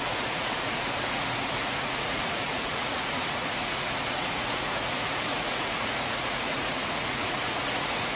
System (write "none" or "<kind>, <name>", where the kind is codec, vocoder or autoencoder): vocoder, Vocos